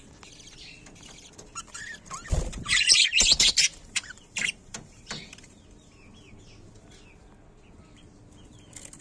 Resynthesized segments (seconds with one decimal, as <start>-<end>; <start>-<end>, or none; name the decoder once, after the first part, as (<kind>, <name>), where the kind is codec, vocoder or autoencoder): 2.5-6.0 (vocoder, BigVGAN v2)